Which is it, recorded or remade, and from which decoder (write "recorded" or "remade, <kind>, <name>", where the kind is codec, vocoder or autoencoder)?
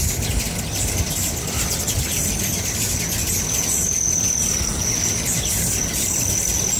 recorded